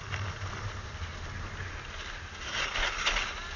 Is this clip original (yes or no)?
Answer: yes